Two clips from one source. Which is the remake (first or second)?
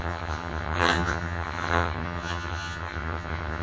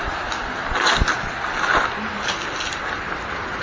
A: first